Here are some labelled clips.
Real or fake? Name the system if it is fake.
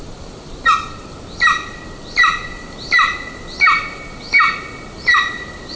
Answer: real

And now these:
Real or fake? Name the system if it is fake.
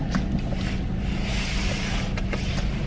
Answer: real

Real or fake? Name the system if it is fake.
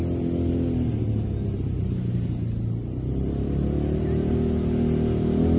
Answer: real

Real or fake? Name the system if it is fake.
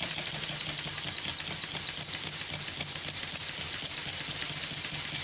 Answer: real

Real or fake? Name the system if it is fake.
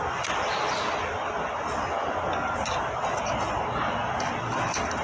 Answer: real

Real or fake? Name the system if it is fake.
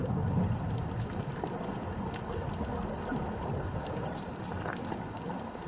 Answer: real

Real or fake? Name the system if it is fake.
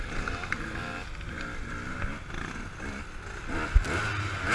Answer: real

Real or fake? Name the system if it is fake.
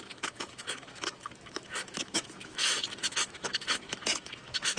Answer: fake, autoencoder, DAC-VAE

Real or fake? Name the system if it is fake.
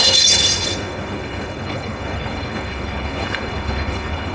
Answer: fake, codec, HILCodec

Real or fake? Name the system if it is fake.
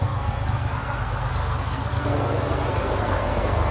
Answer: fake, codec, SNAC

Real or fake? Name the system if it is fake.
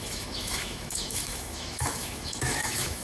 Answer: fake, autoencoder, DAC-VAE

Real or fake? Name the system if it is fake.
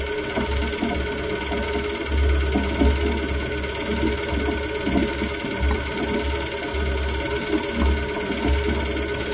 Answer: real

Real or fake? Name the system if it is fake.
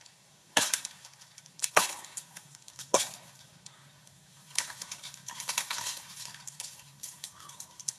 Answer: fake, codec, SNAC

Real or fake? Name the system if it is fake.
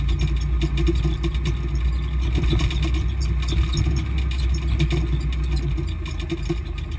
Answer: real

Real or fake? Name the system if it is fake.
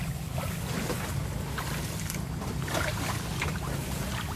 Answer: real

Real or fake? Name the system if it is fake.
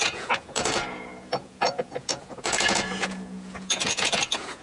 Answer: fake, vocoder, Vocos